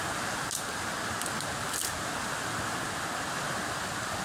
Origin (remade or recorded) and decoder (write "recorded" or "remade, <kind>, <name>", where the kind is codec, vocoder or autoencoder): recorded